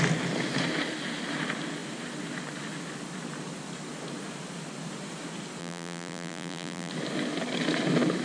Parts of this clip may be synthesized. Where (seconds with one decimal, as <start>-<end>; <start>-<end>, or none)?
5.6-6.9